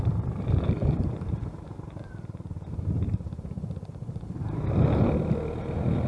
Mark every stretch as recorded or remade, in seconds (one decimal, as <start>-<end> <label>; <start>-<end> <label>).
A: 0.0-1.0 recorded; 1.0-3.8 remade; 3.8-6.1 recorded